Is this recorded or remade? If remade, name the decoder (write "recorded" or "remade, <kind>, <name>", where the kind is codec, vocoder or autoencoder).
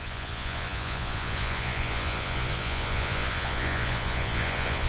remade, vocoder, Vocos